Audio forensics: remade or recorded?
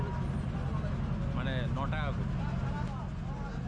recorded